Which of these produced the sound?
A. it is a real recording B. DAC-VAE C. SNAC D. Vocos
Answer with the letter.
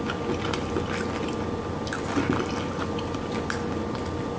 A